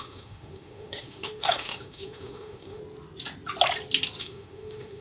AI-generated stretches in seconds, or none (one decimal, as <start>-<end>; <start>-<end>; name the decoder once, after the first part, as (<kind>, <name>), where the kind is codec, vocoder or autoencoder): 0.0-2.8 (autoencoder, DAC-VAE); 4.2-5.0